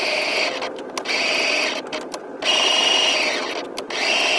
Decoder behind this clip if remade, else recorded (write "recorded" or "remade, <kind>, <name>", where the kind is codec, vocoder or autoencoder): recorded